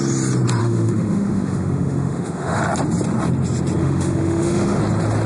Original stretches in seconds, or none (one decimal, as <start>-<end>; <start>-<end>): 0.0-0.6; 2.6-3.8; 4.8-5.3